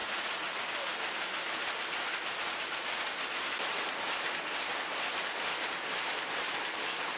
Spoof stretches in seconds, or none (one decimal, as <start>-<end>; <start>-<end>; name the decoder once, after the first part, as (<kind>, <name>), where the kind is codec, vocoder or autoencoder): 0.0-0.6 (vocoder, Vocos)